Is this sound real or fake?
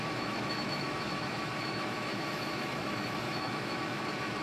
fake